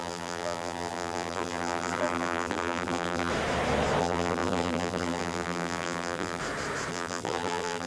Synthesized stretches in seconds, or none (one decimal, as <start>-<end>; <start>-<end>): 0.0-3.3; 4.0-6.4; 6.9-7.9